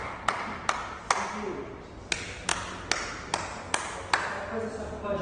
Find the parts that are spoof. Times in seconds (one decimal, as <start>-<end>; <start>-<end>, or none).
none